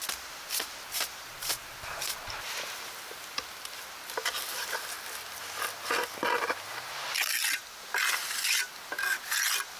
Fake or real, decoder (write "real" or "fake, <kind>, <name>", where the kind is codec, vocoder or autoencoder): real